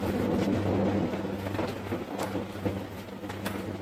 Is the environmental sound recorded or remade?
recorded